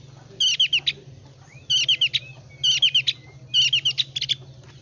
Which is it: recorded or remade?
recorded